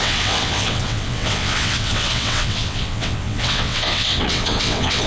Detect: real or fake fake